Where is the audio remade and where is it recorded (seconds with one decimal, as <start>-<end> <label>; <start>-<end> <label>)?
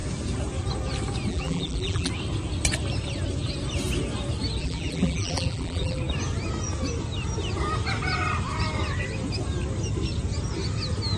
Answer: 0.0-1.3 recorded; 1.3-2.1 remade; 2.1-4.6 recorded; 4.6-6.0 remade; 6.0-11.2 recorded